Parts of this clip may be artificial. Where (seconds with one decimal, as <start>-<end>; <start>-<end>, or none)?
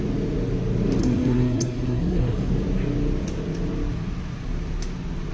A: 1.0-2.5